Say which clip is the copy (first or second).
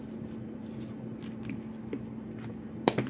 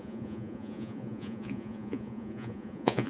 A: second